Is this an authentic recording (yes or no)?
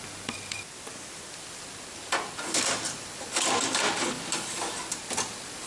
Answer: yes